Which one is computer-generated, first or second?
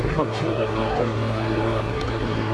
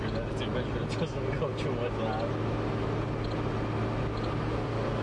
first